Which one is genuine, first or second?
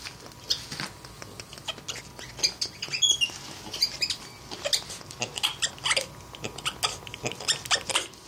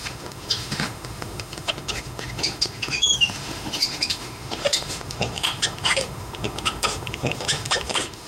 first